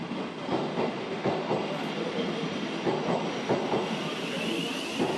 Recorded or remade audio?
recorded